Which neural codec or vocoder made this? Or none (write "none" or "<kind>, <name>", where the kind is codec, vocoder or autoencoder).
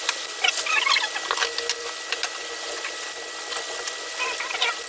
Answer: none